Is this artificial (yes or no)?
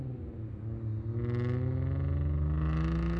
no